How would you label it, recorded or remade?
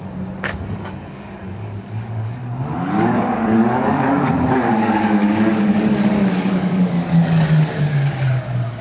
remade